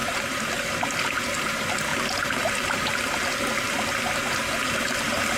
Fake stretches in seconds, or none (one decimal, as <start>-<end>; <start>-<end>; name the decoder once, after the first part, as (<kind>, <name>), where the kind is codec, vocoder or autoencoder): none